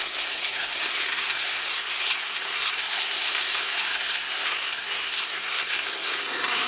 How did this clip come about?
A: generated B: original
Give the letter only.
A